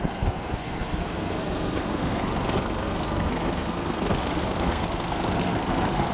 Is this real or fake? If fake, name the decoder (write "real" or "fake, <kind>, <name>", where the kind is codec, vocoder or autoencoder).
fake, codec, SNAC